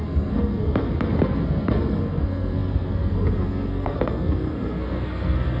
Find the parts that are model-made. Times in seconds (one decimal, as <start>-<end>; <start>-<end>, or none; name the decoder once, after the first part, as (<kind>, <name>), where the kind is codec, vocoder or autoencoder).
0.0-5.6 (codec, SNAC)